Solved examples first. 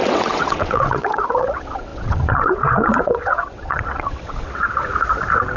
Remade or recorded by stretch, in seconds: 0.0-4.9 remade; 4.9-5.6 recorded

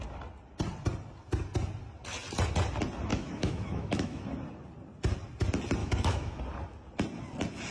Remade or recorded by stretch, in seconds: 0.0-3.1 recorded; 3.1-4.2 remade; 4.2-5.8 recorded; 5.8-6.4 remade; 6.4-7.7 recorded

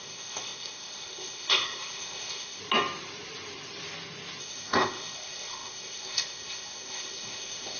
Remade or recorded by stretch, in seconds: 0.0-2.6 remade; 2.6-4.4 recorded; 4.4-7.8 remade

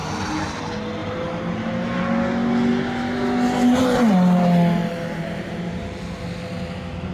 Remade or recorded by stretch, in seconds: 0.0-1.0 recorded; 1.0-2.0 remade; 2.0-4.8 recorded; 4.8-6.2 remade; 6.2-7.1 recorded

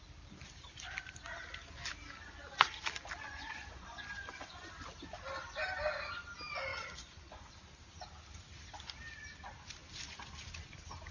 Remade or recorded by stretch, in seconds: 0.0-3.3 recorded; 3.3-4.6 remade; 4.6-6.7 recorded; 6.7-7.5 remade; 7.5-11.1 recorded